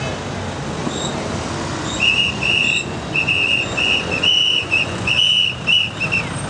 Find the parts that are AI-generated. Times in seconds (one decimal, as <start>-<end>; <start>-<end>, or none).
1.7-5.3